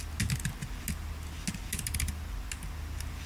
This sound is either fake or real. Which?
real